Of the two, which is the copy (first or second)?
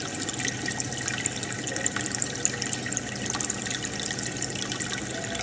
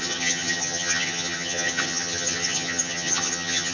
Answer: second